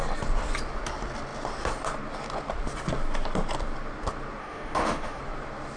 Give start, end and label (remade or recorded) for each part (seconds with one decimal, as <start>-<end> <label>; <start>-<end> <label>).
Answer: 0.0-4.4 recorded; 4.4-5.2 remade; 5.2-5.8 recorded